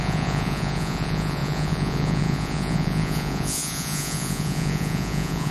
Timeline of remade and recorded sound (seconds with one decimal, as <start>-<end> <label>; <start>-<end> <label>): 0.0-5.5 remade